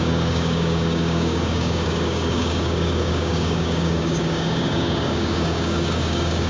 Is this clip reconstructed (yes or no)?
yes